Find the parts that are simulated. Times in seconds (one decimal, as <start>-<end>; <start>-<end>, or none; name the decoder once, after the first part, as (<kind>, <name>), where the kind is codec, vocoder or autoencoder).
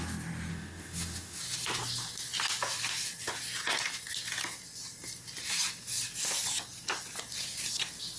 0.5-1.4 (autoencoder, DAC-VAE)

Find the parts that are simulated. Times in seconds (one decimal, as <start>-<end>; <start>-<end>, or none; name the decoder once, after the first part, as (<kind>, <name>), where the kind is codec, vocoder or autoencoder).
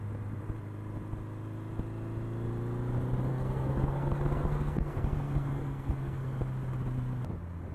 3.3-6.4 (codec, SNAC)